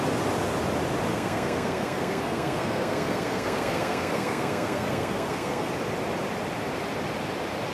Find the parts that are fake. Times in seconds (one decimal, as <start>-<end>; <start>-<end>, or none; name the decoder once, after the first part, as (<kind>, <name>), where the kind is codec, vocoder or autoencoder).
1.1-5.7 (codec, SNAC)